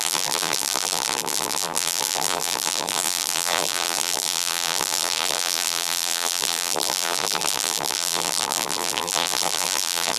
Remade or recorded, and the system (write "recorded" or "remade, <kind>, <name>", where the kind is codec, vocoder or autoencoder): remade, vocoder, BigVGAN v2